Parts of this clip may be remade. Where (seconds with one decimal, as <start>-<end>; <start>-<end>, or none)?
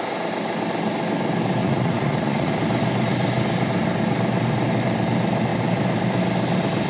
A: 1.6-2.5